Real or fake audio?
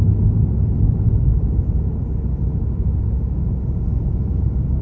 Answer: real